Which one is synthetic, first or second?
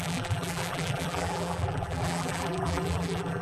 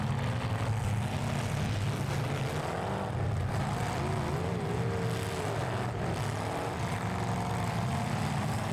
first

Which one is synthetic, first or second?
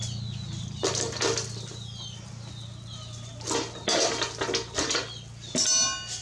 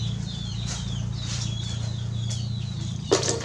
second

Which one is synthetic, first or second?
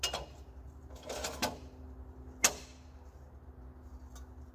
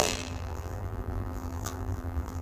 second